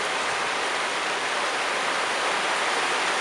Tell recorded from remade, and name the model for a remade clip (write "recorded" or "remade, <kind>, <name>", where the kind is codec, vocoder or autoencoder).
recorded